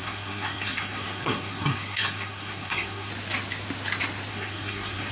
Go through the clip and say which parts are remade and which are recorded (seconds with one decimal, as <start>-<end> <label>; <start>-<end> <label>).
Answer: 0.0-3.1 remade; 3.1-4.3 recorded; 4.3-5.1 remade